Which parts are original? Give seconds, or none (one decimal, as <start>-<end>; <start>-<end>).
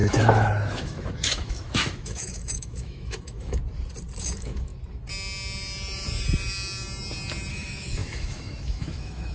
3.6-4.2; 4.7-7.5